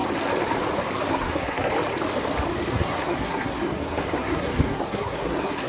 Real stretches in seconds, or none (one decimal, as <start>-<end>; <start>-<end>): 0.0-1.1; 1.7-2.7